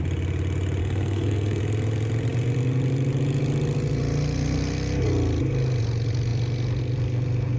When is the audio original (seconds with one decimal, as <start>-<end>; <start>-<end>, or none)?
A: 0.0-0.8; 1.6-7.6